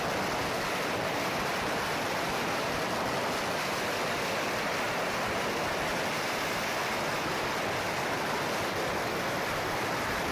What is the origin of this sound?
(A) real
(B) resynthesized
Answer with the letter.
A